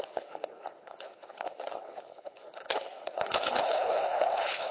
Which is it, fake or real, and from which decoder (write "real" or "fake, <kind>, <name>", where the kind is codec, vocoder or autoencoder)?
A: fake, codec, HILCodec